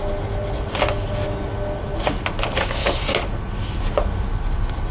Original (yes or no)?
yes